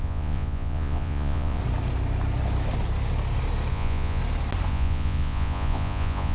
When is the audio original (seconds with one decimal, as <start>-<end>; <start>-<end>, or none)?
1.6-3.7; 4.2-4.7